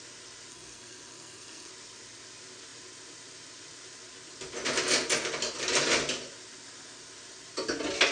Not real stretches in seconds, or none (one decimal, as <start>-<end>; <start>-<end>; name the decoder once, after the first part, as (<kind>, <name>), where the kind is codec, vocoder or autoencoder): 0.5-1.7 (codec, SNAC)